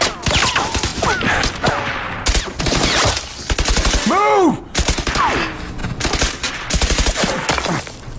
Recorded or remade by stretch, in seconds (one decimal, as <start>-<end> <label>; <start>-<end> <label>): 0.0-8.2 recorded